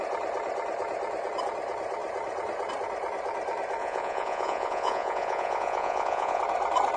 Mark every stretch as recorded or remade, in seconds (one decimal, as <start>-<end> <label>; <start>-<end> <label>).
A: 0.0-3.8 recorded; 3.8-6.4 remade; 6.4-7.0 recorded